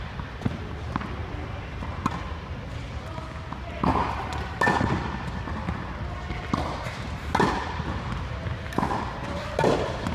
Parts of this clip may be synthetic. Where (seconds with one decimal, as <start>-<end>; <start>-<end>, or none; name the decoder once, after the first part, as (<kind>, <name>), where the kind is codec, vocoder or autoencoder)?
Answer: none